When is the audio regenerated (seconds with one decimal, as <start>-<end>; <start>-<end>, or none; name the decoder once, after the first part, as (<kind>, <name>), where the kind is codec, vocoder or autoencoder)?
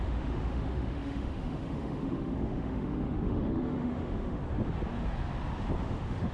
0.0-4.4 (autoencoder, DAC-VAE); 5.8-6.3